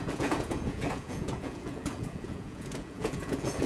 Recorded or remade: remade